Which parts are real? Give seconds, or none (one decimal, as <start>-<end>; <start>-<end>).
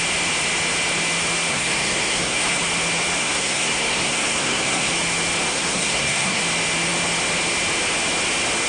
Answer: 0.0-1.5; 2.6-3.2; 4.9-5.5; 6.4-8.7